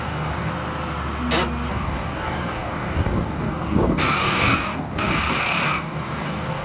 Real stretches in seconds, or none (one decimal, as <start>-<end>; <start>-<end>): 0.5-1.7

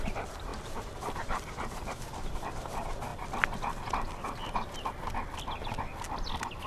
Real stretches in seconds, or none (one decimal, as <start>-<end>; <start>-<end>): 3.1-6.7

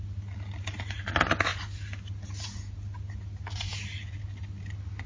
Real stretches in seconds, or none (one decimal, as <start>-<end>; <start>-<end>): 0.0-5.1

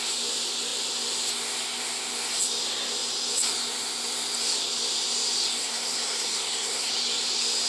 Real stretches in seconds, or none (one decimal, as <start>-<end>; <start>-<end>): 0.0-5.6; 6.9-7.7

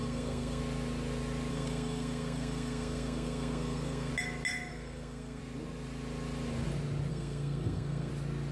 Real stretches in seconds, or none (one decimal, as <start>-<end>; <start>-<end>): 0.6-1.5; 4.1-4.7; 5.4-7.1; 8.1-8.5